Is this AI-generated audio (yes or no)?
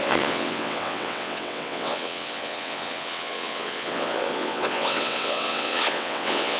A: yes